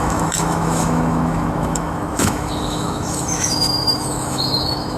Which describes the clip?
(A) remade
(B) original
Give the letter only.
A